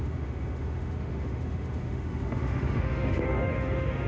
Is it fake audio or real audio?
fake